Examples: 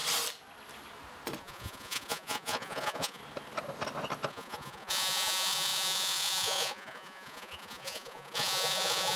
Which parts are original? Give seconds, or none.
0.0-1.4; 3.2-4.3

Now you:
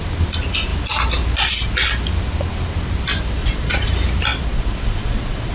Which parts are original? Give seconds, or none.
0.0-3.4; 3.9-4.3

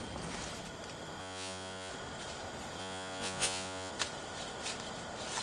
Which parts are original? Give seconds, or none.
0.0-1.2; 1.9-2.8; 3.9-5.4

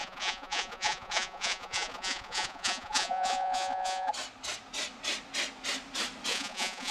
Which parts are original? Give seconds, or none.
4.1-6.3

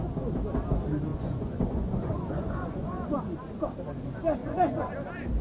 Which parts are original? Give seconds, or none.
0.0-1.1; 3.2-4.4; 4.9-5.4

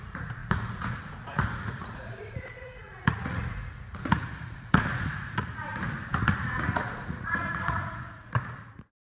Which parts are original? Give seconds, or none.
none